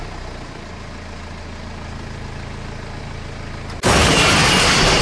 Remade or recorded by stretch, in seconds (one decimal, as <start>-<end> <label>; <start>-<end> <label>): 0.0-5.0 recorded